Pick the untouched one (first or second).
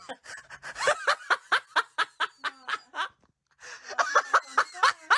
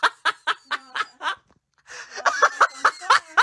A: first